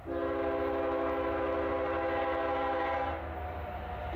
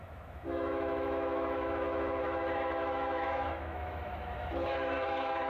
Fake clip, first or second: second